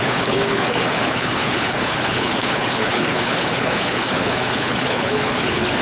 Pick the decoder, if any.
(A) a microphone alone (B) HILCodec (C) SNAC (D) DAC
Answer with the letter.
B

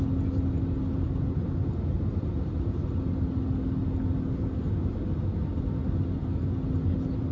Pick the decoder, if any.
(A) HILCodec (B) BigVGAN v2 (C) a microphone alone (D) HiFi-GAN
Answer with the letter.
C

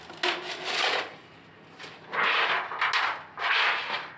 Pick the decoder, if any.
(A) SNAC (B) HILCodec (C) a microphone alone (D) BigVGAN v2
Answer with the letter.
C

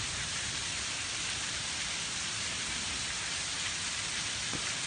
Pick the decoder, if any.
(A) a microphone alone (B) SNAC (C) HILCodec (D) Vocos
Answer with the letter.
A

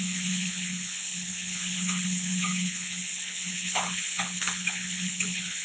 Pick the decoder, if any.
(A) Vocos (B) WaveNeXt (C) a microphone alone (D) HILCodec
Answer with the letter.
D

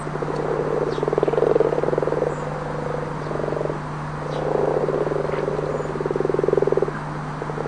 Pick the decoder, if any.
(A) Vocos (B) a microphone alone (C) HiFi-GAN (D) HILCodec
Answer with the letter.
B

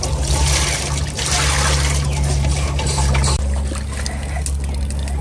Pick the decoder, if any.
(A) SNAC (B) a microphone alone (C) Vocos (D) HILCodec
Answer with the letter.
B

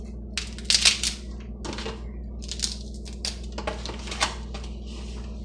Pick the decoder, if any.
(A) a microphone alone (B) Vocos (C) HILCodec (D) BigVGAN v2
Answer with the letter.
A